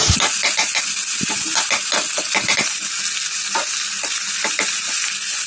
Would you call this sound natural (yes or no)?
yes